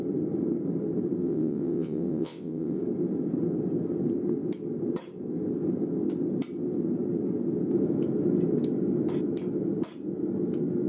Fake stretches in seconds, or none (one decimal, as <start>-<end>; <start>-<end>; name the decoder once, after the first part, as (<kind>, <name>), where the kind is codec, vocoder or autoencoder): 1.2-2.8 (vocoder, WaveNeXt)